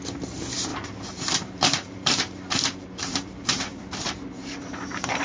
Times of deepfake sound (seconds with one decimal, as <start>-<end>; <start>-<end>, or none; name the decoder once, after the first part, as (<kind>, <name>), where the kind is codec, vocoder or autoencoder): 0.7-3.8 (vocoder, BigVGAN v2)